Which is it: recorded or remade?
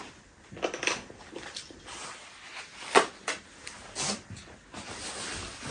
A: recorded